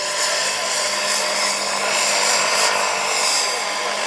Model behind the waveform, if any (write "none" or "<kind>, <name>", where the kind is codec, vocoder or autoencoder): none